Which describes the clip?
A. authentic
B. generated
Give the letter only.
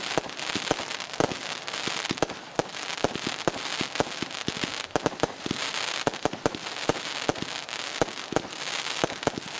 A